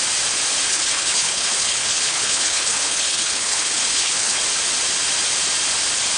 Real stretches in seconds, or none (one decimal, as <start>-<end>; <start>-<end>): 0.0-0.7; 4.4-6.2